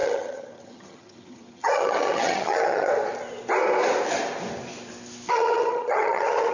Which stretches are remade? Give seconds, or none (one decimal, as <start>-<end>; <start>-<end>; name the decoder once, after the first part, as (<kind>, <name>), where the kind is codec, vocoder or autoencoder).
0.0-2.9 (vocoder, HiFi-GAN); 5.3-6.5